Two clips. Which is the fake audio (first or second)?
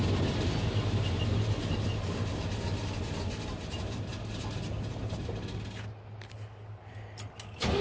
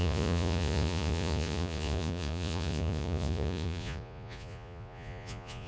second